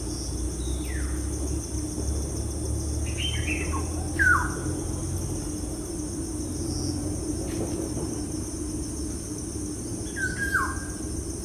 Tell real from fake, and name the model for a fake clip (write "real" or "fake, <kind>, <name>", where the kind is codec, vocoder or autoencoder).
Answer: real